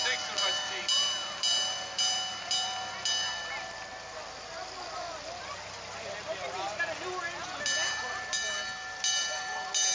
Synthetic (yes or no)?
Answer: no